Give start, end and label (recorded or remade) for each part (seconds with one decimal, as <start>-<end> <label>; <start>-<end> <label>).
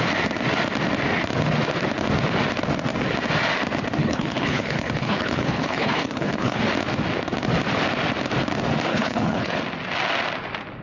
0.0-4.0 recorded; 4.0-6.6 remade; 6.6-8.9 recorded; 8.9-9.6 remade; 9.6-10.8 recorded